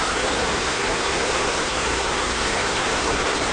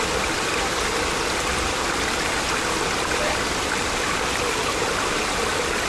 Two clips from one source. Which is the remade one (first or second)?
first